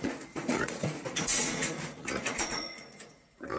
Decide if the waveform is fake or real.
fake